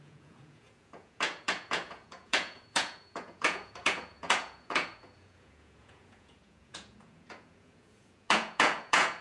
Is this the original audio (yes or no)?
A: no